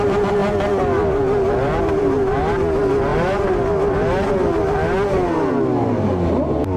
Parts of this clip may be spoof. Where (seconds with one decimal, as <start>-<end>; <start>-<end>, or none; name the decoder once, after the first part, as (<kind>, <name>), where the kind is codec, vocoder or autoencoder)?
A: none